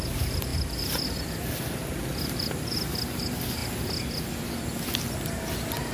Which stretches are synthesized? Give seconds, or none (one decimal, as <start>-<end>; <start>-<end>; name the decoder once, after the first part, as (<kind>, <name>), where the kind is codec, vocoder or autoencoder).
none

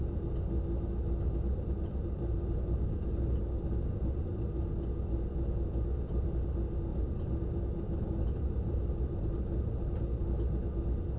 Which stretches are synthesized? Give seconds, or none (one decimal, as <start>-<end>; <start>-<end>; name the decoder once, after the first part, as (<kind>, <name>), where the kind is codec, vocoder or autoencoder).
1.5-4.6 (vocoder, BigVGAN v2); 6.9-10.0

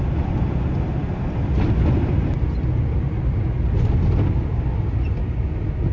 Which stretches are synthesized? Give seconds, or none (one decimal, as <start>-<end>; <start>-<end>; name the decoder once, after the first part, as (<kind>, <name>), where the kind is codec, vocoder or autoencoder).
none

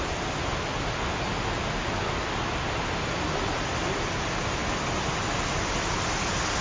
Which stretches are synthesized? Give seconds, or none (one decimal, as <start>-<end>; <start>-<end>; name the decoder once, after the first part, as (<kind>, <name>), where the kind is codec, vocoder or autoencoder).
none

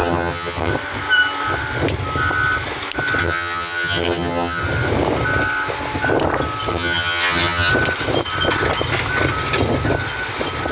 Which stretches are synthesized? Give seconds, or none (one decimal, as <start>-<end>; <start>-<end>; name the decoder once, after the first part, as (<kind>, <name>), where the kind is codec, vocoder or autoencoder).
0.0-0.7 (vocoder, HiFi-GAN); 3.2-4.6; 6.7-7.7

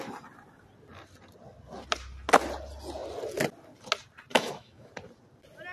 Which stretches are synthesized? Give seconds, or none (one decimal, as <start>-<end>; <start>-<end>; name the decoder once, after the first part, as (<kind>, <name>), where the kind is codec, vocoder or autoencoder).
4.3-4.9 (autoencoder, DAC-VAE)